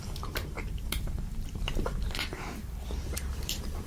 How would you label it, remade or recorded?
remade